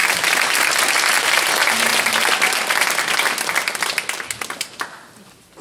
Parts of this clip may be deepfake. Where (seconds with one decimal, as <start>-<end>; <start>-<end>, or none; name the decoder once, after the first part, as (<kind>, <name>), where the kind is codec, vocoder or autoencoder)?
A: none